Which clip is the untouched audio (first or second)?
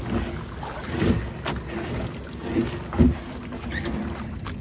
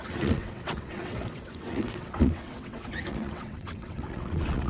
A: first